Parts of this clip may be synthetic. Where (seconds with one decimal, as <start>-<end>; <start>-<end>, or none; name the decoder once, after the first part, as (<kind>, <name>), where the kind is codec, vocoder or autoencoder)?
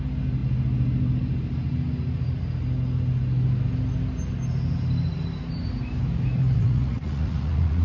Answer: 6.4-7.8 (vocoder, Vocos)